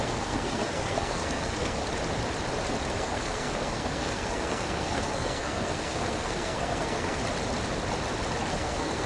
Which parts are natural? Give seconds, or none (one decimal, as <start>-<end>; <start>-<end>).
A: 1.8-2.9; 7.2-8.5